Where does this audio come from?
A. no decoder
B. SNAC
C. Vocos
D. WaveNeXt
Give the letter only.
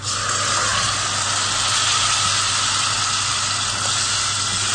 A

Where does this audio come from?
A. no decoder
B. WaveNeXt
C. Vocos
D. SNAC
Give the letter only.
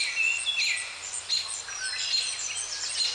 A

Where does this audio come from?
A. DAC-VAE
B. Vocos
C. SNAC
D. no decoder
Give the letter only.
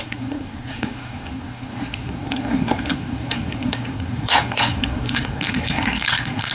C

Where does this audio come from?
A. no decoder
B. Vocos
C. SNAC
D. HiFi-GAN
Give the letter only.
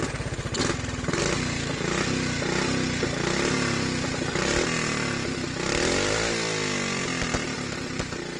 A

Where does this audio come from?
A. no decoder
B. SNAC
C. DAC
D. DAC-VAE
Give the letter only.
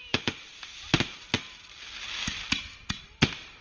A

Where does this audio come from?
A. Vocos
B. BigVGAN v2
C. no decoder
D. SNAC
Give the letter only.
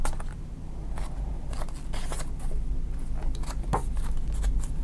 C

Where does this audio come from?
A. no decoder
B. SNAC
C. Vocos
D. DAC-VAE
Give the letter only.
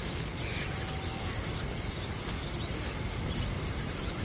A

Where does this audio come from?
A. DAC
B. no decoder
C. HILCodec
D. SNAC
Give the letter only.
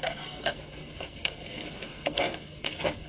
D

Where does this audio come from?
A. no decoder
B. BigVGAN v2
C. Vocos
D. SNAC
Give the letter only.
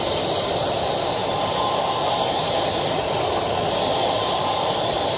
A